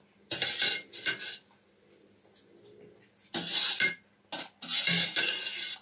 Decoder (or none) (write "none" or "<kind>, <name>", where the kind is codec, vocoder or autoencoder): none